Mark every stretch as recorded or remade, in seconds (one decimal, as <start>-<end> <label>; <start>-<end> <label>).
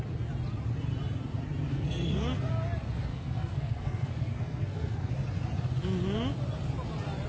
0.0-1.7 recorded; 1.7-2.5 remade; 2.5-3.1 recorded; 3.1-5.1 remade; 5.1-7.3 recorded